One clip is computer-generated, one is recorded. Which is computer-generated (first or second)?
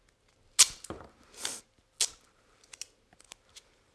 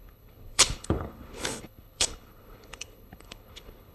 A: second